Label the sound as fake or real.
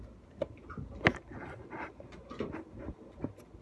real